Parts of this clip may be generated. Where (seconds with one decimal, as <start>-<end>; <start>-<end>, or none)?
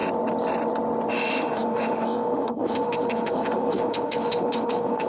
1.1-5.1